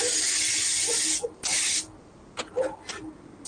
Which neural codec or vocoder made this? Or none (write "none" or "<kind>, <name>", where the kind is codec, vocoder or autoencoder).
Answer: none